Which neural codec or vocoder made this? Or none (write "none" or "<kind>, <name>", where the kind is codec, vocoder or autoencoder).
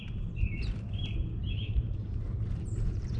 vocoder, BigVGAN v2